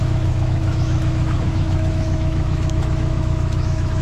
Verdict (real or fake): fake